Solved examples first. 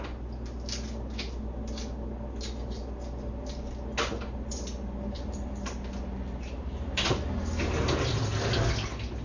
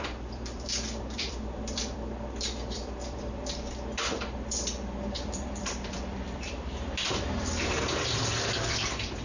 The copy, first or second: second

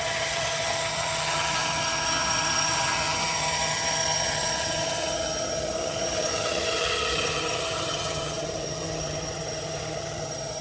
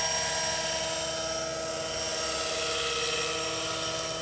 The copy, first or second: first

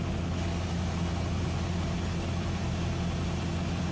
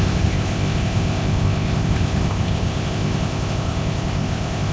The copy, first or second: second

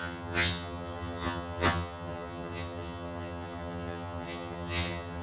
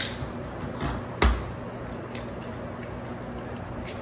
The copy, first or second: first